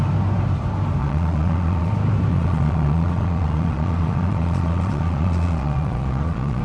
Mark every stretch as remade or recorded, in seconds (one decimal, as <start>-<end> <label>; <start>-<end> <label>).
0.0-1.0 recorded; 1.0-1.9 remade; 1.9-2.3 recorded; 2.3-6.6 remade